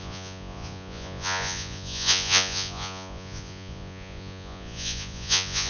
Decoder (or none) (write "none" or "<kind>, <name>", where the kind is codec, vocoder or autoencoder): vocoder, Vocos